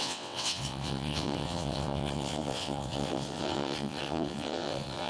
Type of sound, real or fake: fake